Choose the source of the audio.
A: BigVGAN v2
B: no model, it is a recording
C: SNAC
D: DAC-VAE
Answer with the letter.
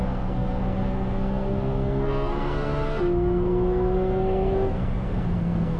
C